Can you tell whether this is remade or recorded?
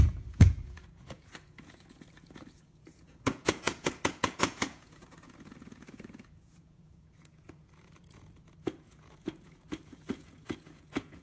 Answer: remade